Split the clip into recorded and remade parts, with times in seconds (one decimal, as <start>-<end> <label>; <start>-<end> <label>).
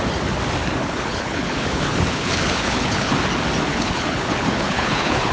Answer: 0.0-0.8 recorded; 0.8-3.1 remade; 3.1-3.7 recorded; 3.7-5.3 remade